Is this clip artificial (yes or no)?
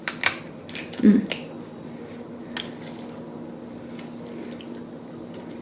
no